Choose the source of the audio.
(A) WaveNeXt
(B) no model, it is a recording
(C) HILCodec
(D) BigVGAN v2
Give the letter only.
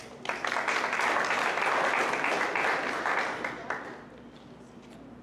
B